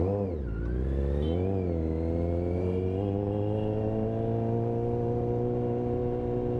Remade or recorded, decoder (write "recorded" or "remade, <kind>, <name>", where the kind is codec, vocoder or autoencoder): recorded